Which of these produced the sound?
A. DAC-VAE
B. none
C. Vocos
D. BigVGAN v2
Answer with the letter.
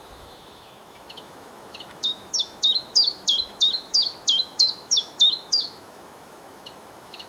A